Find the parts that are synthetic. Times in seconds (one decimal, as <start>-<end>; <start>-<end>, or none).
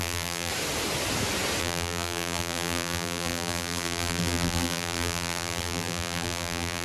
0.0-0.5; 1.6-6.8